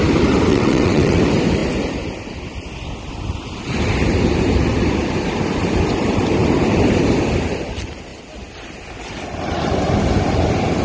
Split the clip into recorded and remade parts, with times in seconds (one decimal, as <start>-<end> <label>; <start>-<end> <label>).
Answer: 0.0-0.5 recorded; 0.5-1.2 remade; 1.2-10.8 recorded